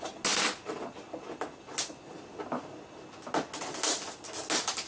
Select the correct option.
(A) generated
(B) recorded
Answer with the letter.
B